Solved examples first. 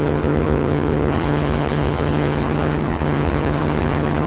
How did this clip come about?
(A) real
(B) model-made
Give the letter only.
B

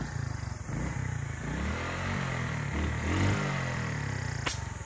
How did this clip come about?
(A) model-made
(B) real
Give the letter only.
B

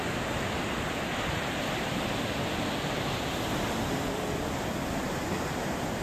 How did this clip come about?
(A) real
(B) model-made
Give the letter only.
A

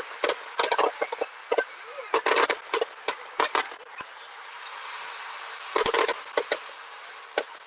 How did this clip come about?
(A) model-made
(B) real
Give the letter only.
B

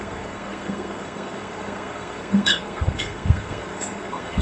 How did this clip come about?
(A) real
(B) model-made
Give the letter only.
B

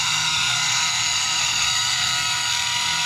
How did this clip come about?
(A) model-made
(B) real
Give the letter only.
A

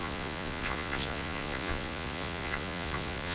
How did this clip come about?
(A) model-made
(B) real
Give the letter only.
A